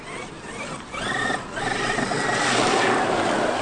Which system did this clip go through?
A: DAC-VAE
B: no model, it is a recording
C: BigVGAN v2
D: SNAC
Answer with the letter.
B